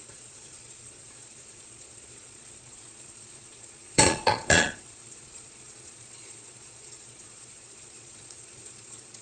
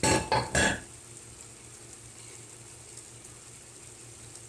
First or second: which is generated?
first